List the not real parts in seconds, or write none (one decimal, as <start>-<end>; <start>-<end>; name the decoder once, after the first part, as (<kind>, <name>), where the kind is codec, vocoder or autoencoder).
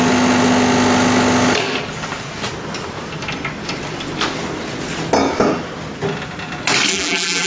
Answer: 6.9-7.5 (vocoder, BigVGAN v2)